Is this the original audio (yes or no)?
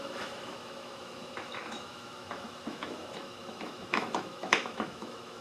no